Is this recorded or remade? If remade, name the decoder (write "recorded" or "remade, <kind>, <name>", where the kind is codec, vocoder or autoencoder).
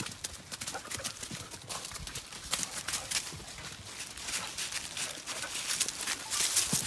recorded